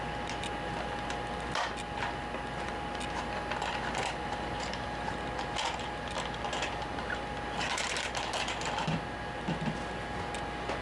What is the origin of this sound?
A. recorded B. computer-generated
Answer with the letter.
A